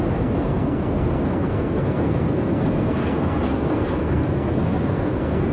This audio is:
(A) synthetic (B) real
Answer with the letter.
A